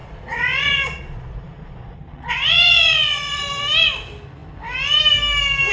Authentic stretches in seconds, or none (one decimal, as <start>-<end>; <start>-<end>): 3.4-5.7